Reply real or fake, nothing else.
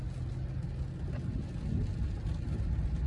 real